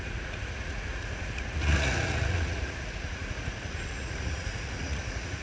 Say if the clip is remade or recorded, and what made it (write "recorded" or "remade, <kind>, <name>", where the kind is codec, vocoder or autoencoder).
remade, vocoder, Vocos